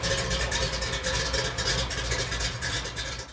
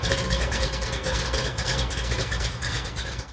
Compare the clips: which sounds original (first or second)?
first